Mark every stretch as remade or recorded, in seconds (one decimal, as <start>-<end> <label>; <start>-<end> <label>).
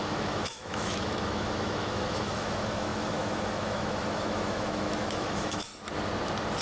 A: 0.0-5.7 remade; 5.7-6.6 recorded